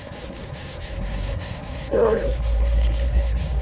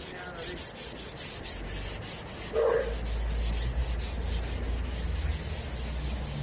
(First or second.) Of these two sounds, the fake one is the first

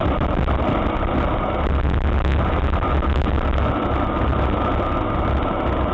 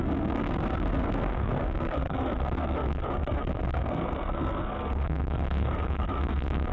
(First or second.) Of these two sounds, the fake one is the second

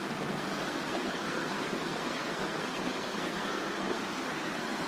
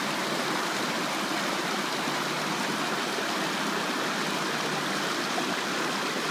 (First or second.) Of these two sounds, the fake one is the first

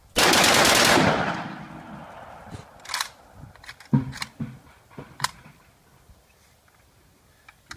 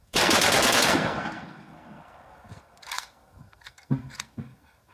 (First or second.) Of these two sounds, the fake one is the second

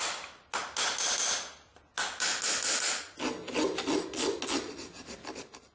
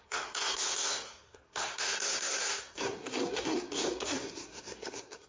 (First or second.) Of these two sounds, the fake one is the second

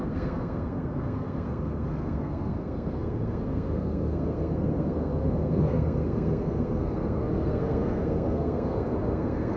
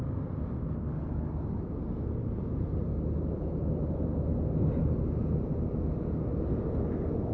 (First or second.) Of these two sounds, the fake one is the first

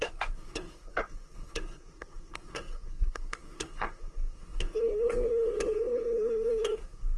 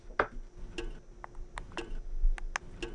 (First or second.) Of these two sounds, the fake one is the first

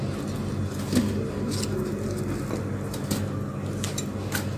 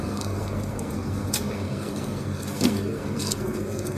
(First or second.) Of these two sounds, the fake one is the second